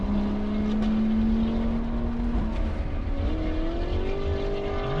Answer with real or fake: real